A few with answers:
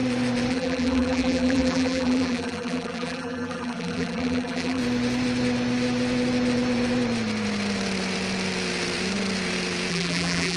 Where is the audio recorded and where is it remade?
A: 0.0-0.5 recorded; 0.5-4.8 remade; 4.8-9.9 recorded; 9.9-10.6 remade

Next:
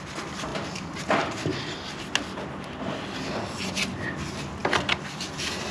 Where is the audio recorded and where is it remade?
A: 0.0-5.7 recorded

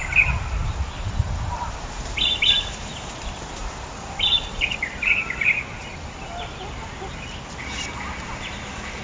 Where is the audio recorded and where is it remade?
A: 0.0-9.0 recorded

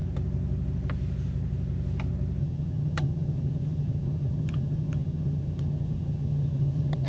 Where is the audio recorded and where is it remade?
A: 0.0-2.4 recorded; 2.4-7.1 remade

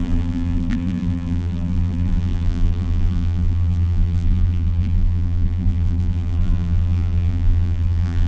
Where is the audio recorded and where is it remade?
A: 0.0-8.3 remade